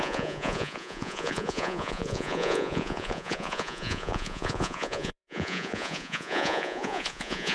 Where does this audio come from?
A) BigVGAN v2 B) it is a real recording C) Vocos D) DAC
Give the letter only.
C